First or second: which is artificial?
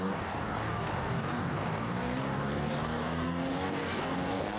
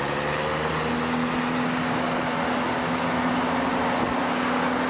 first